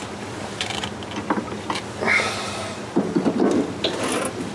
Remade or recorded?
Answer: recorded